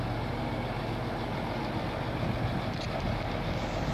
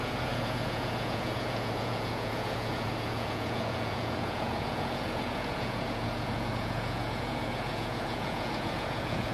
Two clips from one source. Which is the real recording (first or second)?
first